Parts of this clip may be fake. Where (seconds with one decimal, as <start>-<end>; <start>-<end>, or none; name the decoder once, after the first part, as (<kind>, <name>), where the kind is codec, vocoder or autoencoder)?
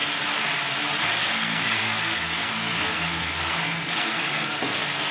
1.2-5.1 (codec, SNAC)